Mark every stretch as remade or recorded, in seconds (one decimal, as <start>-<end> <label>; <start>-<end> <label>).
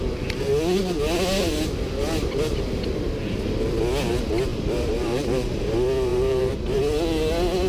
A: 0.0-4.5 recorded; 4.5-5.6 remade; 5.6-6.1 recorded; 6.1-6.8 remade; 6.8-7.7 recorded